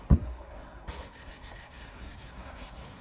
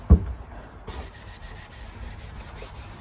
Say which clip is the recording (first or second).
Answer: second